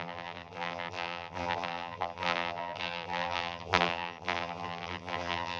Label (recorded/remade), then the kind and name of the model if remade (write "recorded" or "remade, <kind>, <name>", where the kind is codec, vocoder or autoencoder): remade, vocoder, BigVGAN v2